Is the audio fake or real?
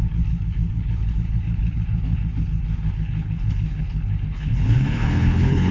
fake